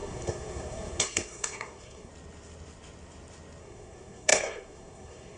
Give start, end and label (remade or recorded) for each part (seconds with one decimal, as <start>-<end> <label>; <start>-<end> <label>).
0.0-2.1 remade; 2.1-3.6 recorded; 3.6-5.4 remade